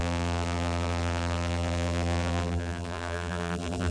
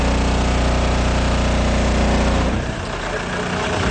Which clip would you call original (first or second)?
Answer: second